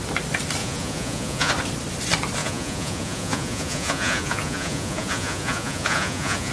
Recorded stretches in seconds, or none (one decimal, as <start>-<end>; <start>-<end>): 0.0-0.6; 1.5-2.4

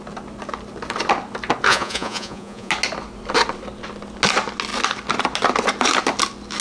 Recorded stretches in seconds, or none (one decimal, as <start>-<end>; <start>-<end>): 0.0-1.7; 2.7-6.6